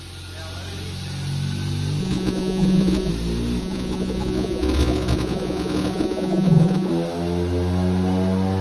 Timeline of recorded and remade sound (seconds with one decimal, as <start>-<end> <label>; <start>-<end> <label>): 0.0-2.0 recorded; 2.0-3.1 remade; 3.1-3.6 recorded; 3.6-6.9 remade; 6.9-8.6 recorded